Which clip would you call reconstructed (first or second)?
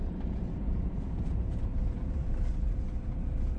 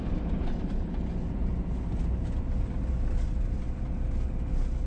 first